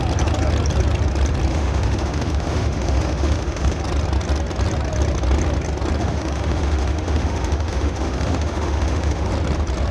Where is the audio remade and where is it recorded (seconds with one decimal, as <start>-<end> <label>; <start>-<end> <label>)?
0.0-1.5 recorded; 1.5-3.8 remade; 3.8-6.0 recorded; 6.0-9.3 remade; 9.3-9.9 recorded